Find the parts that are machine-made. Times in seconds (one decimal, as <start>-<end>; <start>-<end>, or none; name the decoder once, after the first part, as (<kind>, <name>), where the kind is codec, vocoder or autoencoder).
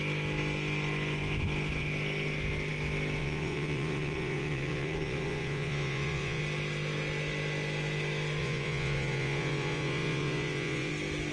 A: 3.2-6.4 (vocoder, Vocos); 8.4-10.9